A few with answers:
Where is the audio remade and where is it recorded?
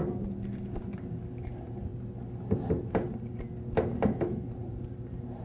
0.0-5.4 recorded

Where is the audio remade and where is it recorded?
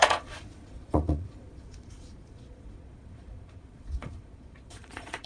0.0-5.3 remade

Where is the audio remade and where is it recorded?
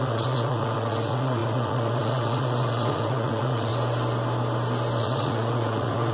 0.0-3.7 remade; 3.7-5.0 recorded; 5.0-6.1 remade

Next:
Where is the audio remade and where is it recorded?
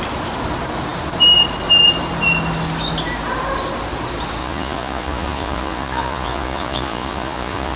0.0-4.4 recorded; 4.4-7.8 remade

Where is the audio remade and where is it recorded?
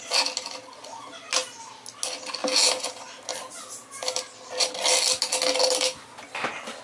0.0-6.8 recorded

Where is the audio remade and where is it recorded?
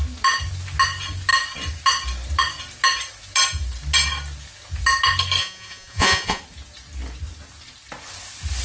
0.0-5.4 recorded; 5.4-6.4 remade; 6.4-8.6 recorded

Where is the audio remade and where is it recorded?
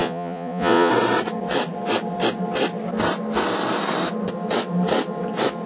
0.0-0.9 remade; 0.9-5.7 recorded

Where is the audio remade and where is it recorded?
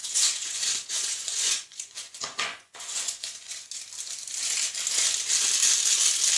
0.0-3.7 remade; 3.7-6.4 recorded